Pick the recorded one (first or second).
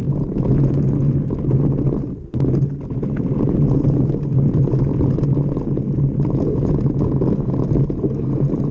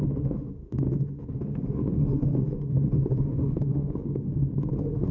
first